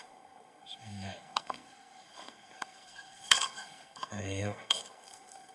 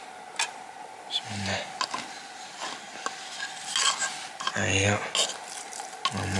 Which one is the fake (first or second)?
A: first